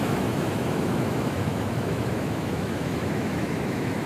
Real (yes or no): no